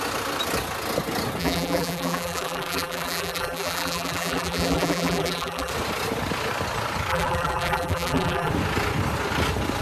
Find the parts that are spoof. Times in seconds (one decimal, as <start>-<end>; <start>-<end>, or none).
1.4-5.7; 7.1-8.5